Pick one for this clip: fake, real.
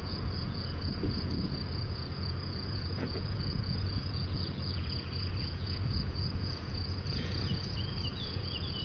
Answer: fake